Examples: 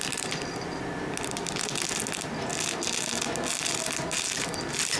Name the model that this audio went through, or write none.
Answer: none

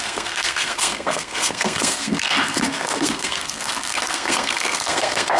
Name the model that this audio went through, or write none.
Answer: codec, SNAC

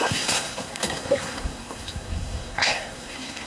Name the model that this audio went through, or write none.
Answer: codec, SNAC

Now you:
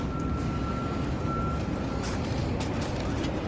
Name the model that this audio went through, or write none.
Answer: none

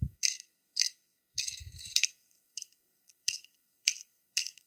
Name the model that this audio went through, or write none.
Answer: codec, SNAC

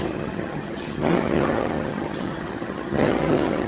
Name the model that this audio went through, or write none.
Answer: vocoder, HiFi-GAN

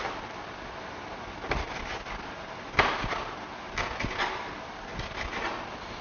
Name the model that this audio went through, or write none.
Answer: none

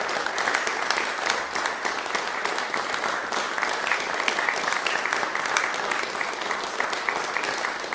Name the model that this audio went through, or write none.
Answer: none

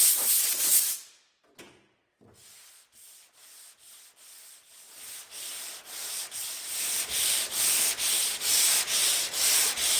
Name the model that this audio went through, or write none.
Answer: none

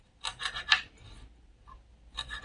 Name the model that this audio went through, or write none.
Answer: none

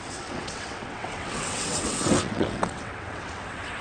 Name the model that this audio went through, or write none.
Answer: vocoder, WaveNeXt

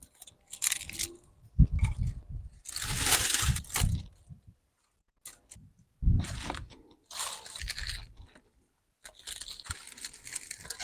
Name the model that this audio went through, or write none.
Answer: none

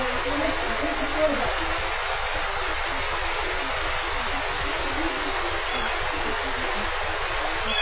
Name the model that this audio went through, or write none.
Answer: none